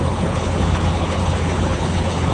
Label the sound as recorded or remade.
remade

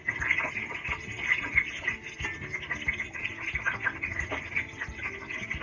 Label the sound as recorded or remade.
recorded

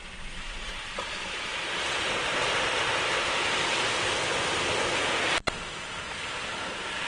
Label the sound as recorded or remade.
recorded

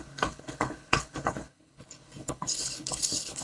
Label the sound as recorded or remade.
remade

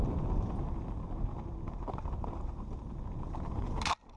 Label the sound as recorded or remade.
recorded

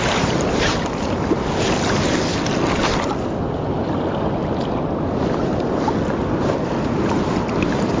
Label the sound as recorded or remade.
recorded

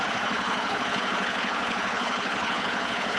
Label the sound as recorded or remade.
remade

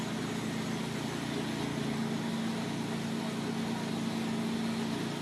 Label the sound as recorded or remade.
recorded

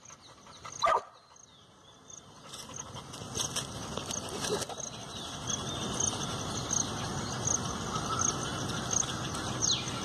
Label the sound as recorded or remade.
recorded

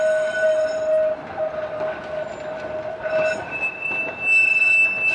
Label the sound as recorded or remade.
recorded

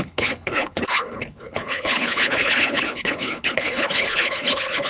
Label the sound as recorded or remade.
remade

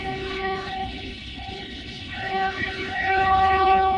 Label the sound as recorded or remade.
remade